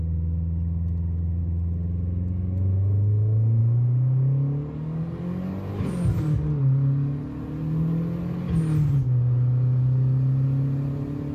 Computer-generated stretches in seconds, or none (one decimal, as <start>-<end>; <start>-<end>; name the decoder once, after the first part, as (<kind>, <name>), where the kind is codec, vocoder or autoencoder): none